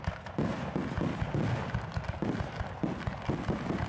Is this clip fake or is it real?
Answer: real